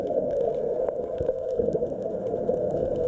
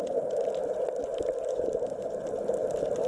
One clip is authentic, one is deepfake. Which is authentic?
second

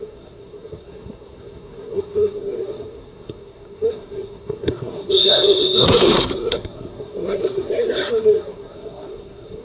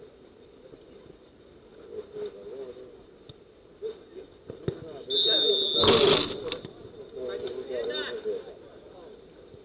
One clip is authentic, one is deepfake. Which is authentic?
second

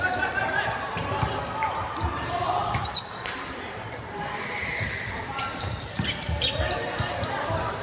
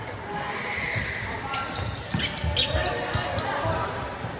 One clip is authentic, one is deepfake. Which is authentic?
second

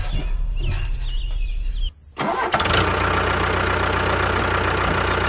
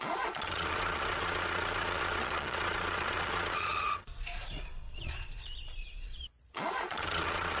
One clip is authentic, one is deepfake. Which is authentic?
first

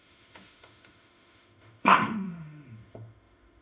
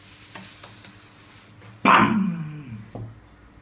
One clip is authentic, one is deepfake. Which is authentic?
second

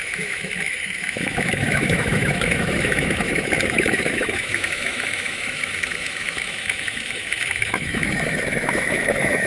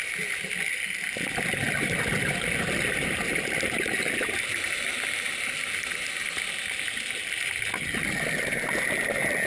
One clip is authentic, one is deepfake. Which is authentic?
second